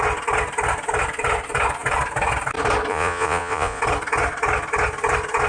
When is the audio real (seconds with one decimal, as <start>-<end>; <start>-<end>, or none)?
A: 0.0-2.9; 3.8-5.5

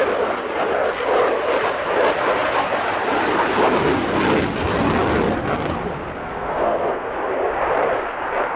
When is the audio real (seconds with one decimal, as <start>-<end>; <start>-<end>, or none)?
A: 0.0-6.2; 7.1-8.6

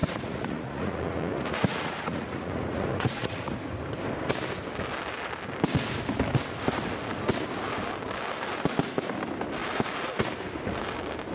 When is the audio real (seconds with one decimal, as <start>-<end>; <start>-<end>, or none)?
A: 3.5-11.3

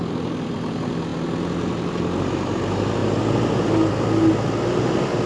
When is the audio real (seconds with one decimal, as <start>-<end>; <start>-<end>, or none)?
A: 0.0-5.3

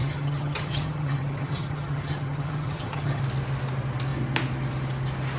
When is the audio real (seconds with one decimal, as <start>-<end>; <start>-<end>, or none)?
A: 3.2-5.4

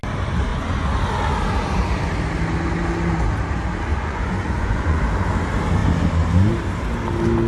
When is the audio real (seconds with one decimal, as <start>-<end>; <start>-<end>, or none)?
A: 0.0-0.5; 1.0-3.9; 5.0-7.5

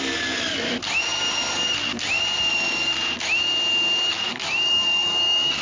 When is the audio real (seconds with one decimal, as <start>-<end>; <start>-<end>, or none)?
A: 0.0-4.3

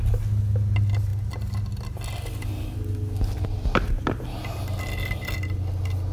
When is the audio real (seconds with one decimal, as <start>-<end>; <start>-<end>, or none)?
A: 0.0-6.1